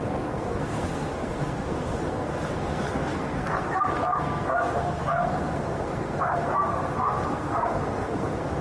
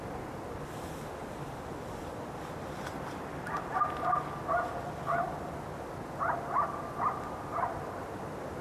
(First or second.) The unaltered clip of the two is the second